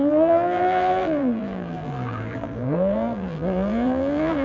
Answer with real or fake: fake